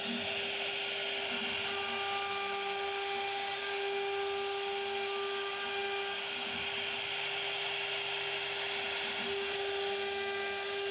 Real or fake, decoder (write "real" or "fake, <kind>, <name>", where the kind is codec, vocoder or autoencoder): real